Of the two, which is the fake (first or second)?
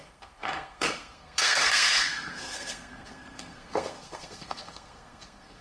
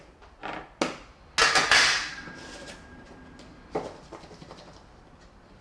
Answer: first